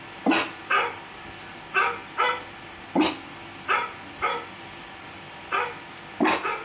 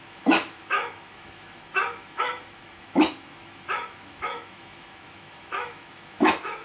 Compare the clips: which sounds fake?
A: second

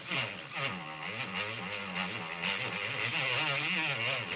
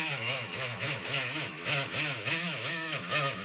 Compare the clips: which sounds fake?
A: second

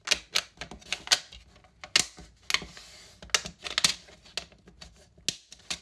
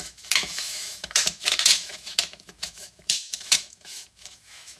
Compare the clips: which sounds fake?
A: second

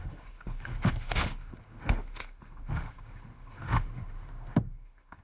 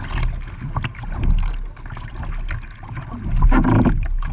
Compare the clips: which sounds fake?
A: first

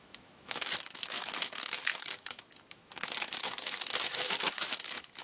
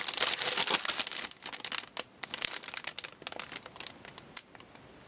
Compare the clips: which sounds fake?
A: first